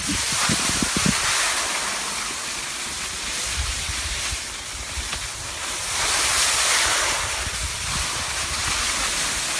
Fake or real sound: real